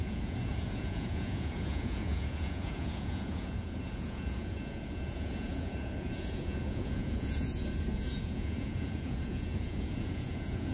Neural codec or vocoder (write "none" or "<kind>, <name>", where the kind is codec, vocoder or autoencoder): vocoder, Vocos